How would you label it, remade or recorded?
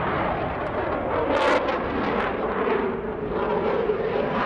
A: recorded